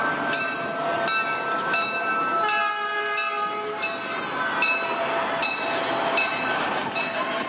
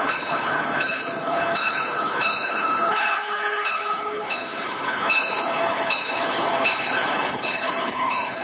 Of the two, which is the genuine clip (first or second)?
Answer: first